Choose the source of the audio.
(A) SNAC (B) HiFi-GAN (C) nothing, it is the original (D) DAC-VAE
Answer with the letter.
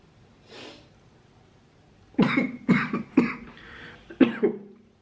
C